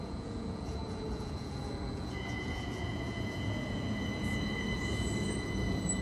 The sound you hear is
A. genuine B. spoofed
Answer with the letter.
B